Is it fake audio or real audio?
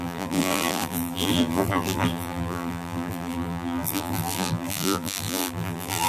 fake